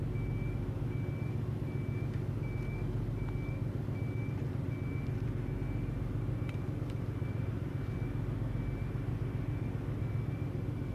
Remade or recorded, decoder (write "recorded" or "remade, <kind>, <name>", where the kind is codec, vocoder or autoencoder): recorded